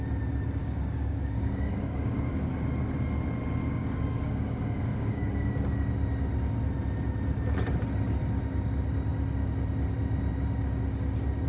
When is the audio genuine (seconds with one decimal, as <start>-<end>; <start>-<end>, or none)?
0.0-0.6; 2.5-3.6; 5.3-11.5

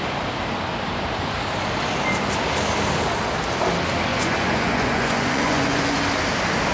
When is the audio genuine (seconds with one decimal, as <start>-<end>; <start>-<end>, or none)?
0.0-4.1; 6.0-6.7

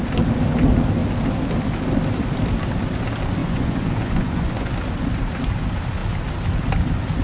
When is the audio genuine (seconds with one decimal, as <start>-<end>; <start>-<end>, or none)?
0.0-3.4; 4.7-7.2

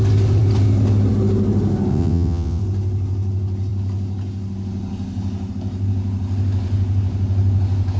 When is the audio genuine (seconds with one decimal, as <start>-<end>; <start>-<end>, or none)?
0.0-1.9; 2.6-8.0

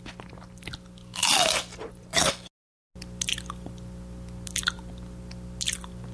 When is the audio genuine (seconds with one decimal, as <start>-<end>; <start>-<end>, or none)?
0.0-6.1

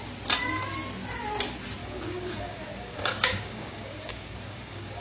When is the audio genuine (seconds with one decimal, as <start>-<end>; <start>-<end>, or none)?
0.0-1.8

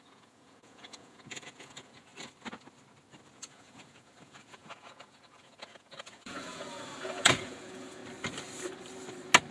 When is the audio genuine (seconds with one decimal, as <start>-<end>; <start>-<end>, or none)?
2.1-3.3; 8.0-9.5